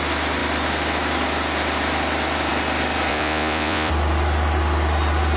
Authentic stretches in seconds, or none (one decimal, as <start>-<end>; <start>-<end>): 0.0-3.1; 3.9-5.4